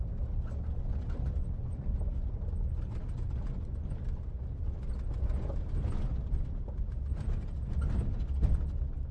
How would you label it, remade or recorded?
recorded